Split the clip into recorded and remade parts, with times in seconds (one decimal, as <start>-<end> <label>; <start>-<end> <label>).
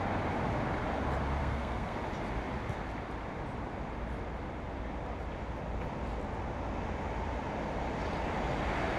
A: 0.0-1.4 recorded; 1.4-2.0 remade; 2.0-9.0 recorded